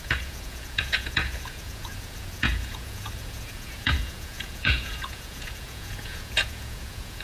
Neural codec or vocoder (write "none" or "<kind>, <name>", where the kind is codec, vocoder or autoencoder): vocoder, Vocos